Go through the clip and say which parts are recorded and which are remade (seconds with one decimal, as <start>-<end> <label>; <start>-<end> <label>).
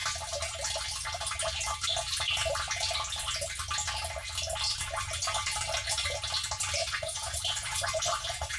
0.0-6.8 recorded; 6.8-8.6 remade